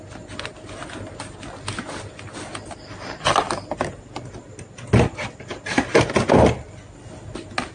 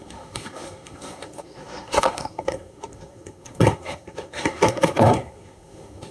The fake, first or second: second